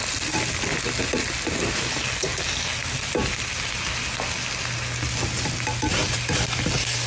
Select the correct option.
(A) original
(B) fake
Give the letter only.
A